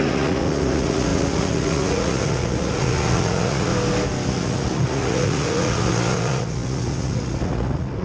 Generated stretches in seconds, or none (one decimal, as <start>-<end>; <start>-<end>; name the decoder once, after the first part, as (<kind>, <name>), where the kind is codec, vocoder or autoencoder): 0.0-3.7 (vocoder, Vocos); 4.3-8.0